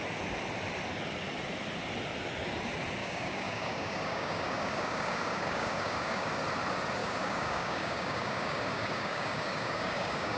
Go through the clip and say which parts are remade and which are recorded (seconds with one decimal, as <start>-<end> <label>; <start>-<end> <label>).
0.0-3.0 recorded; 3.0-6.3 remade; 6.3-7.0 recorded; 7.0-10.4 remade